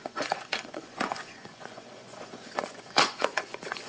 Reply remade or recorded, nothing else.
remade